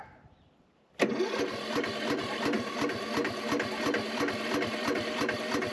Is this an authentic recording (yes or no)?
yes